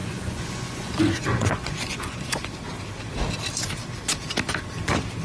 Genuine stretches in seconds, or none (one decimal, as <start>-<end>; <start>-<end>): 2.4-5.2